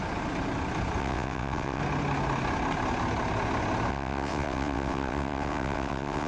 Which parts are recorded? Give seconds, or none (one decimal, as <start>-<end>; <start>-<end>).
0.0-1.0; 1.8-3.9